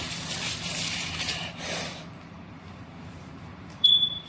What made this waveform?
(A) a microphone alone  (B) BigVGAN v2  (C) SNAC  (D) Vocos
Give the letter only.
B